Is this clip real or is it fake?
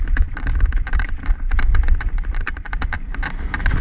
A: fake